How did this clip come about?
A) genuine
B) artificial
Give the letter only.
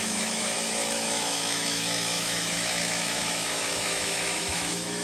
B